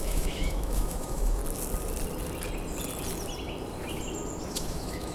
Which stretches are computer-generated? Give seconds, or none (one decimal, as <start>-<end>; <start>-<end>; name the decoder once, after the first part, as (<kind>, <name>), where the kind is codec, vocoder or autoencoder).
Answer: 0.0-1.4 (autoencoder, DAC-VAE); 4.5-5.1